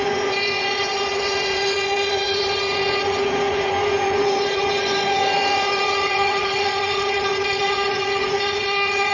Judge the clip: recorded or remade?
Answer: remade